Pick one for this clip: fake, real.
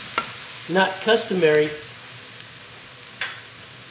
real